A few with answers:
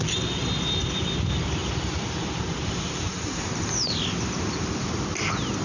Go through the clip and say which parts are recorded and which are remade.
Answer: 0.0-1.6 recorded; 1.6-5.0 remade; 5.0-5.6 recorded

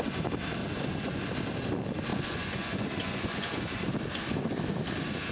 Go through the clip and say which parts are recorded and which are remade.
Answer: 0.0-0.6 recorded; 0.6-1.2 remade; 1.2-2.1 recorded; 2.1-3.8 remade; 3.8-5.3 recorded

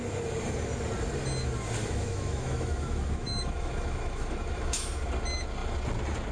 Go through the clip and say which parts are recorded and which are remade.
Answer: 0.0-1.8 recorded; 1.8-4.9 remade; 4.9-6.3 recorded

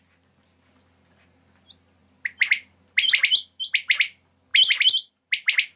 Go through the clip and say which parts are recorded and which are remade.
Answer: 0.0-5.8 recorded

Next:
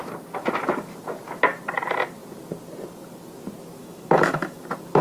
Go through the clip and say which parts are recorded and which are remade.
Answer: 0.0-3.8 recorded; 3.8-4.6 remade; 4.6-5.0 recorded